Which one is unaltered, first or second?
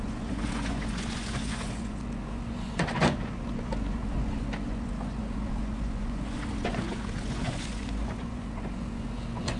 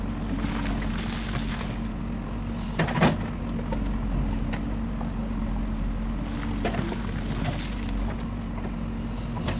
second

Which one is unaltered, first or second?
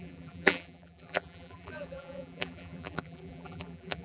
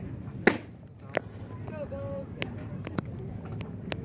second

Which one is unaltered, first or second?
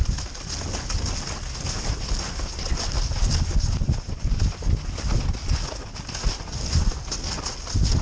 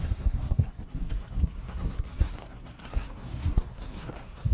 first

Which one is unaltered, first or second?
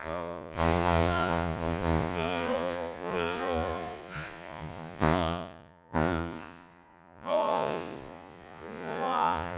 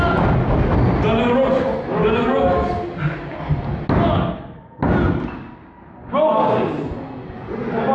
second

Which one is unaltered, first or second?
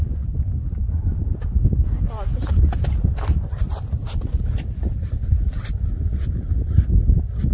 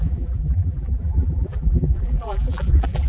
first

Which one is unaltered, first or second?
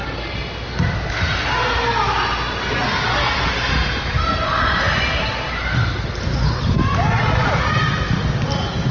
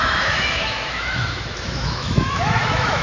first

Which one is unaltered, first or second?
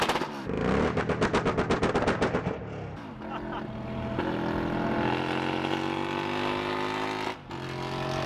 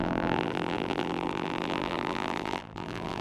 first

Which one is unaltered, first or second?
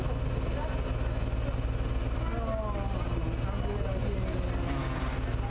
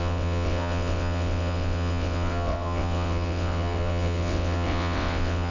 first